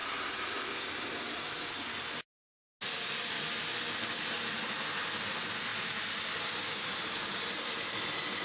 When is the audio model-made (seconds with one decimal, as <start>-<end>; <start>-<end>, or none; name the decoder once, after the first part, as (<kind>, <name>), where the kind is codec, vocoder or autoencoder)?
none